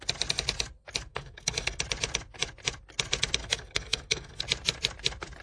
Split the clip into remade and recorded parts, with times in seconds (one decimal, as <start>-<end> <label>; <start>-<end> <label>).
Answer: 0.0-1.1 recorded; 1.1-1.8 remade; 1.8-3.4 recorded; 3.4-4.4 remade; 4.4-5.4 recorded